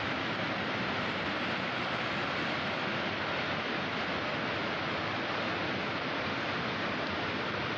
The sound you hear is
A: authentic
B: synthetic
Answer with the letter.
A